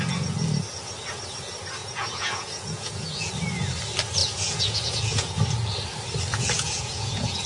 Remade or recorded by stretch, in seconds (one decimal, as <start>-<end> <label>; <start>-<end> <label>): 0.0-1.8 recorded; 1.8-3.3 remade; 3.3-4.2 recorded; 4.2-5.4 remade; 5.4-6.3 recorded; 6.3-7.5 remade